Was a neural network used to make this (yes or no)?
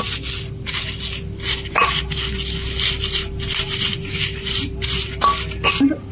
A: no